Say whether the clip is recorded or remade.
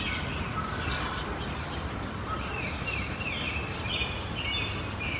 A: recorded